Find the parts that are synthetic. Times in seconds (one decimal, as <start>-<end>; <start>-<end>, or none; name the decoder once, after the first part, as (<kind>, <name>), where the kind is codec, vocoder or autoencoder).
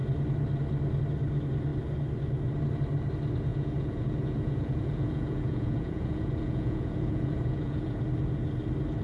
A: 3.5-8.0 (vocoder, Vocos)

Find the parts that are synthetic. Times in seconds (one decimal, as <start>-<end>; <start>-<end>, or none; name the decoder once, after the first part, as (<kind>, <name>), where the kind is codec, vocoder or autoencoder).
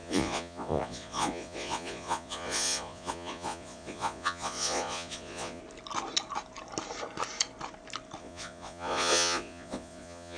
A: 0.0-5.6 (vocoder, Vocos); 8.2-10.4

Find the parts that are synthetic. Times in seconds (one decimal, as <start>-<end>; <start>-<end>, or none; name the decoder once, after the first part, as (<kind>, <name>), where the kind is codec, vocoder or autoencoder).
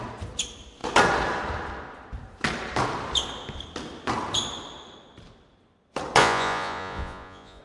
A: 6.2-7.6 (vocoder, Vocos)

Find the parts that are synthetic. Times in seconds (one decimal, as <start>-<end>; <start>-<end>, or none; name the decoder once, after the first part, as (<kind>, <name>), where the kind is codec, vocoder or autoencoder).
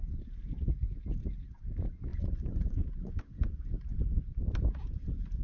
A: 2.1-3.2 (vocoder, Vocos)